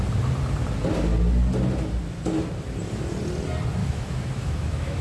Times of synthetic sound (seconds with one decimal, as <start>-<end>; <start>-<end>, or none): 3.8-5.0

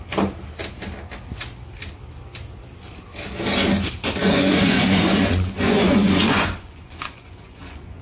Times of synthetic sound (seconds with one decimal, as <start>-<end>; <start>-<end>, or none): 4.2-8.0

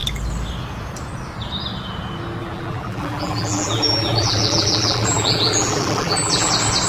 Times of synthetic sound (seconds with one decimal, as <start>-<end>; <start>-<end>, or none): 2.4-6.5